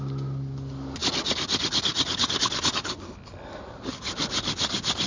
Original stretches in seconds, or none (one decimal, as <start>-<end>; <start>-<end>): 0.0-5.1